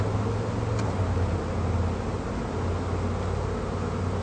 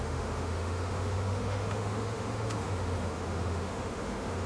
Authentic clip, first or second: first